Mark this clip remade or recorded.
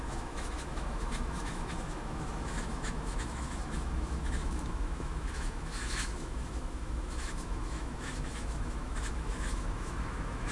remade